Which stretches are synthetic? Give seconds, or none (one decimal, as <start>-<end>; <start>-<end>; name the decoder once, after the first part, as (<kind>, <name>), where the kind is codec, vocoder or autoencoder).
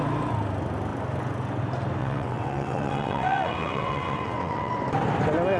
2.0-4.7 (vocoder, WaveNeXt)